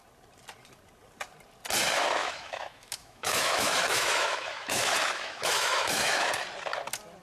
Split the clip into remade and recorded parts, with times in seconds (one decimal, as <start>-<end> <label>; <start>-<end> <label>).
0.0-2.2 recorded; 2.2-6.3 remade; 6.3-7.2 recorded